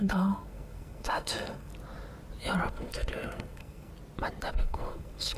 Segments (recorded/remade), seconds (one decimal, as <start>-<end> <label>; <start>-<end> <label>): 0.0-1.7 remade; 1.7-2.7 recorded; 2.7-3.9 remade; 3.9-4.5 recorded; 4.5-5.4 remade